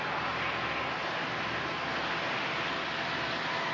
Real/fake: real